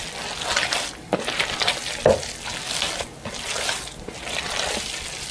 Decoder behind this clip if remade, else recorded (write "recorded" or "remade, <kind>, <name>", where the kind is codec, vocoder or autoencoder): recorded